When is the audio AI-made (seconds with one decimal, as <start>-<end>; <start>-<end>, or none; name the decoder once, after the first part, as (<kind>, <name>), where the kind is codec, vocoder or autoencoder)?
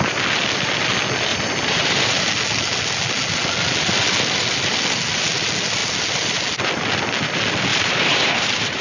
1.3-2.3 (vocoder, BigVGAN v2); 7.7-8.8